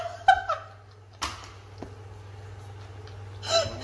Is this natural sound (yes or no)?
yes